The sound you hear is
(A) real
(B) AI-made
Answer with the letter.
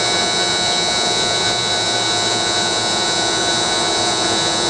B